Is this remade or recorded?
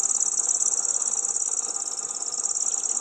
recorded